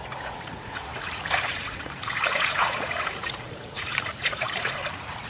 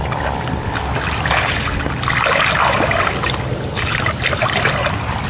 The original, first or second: second